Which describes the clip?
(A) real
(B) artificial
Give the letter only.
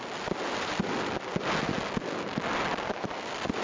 A